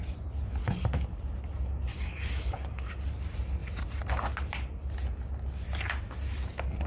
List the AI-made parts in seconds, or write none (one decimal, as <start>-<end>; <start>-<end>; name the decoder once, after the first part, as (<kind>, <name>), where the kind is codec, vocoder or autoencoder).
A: 0.6-1.2 (codec, DAC); 1.9-3.0